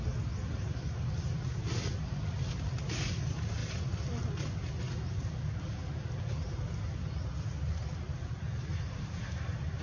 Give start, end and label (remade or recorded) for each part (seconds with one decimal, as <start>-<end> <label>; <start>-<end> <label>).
0.0-8.7 recorded; 8.7-9.2 remade; 9.2-9.8 recorded